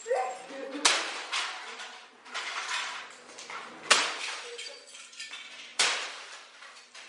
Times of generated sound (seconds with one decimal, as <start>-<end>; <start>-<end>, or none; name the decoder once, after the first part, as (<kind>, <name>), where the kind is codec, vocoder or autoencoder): 5.7-7.1 (vocoder, BigVGAN v2)